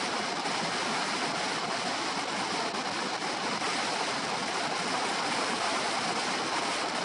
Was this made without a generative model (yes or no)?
yes